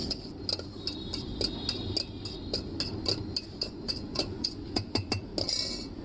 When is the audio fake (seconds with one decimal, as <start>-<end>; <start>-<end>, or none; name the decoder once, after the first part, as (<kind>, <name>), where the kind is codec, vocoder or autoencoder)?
3.6-5.3 (vocoder, Vocos)